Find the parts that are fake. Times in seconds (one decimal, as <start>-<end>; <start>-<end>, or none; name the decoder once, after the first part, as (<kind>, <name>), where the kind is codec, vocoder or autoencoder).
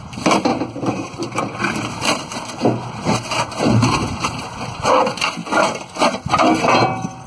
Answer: 0.5-4.9 (vocoder, BigVGAN v2)